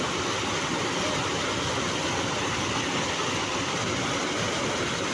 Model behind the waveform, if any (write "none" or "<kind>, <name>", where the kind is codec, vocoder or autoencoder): none